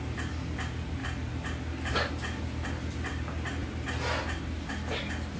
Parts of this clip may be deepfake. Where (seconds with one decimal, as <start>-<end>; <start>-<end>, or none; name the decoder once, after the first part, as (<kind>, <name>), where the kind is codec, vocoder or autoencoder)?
none